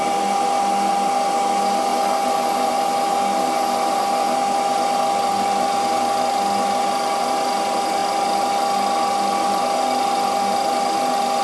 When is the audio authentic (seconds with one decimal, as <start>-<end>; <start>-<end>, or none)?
0.0-11.4